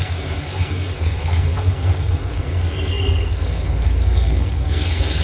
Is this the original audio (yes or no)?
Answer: no